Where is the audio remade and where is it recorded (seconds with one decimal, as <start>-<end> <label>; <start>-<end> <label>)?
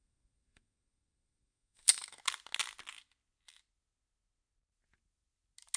0.0-2.2 remade; 2.2-5.8 recorded